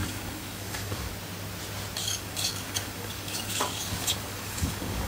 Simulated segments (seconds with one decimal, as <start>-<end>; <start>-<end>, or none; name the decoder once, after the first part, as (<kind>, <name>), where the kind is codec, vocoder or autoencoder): 0.0-1.1 (codec, DAC); 2.0-5.1

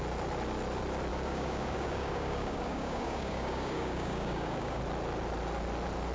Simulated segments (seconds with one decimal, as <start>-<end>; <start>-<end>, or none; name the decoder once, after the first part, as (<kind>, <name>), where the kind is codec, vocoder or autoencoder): 1.1-4.8 (codec, DAC)